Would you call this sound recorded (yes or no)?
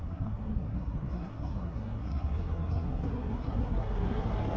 no